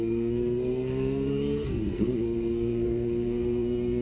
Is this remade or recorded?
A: remade